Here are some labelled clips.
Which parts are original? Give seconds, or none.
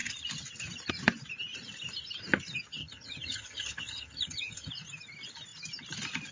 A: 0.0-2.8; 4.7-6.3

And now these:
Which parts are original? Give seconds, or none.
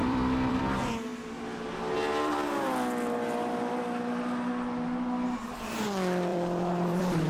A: 0.6-6.3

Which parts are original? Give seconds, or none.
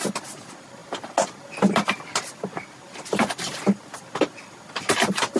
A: 0.0-5.4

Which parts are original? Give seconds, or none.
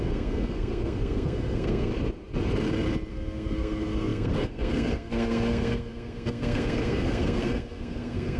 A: 1.9-3.1